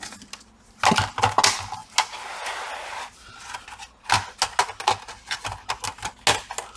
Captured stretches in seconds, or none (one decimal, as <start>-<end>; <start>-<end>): 0.0-6.8